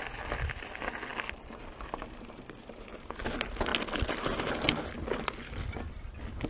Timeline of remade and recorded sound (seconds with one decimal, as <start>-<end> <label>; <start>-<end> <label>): 0.0-6.5 recorded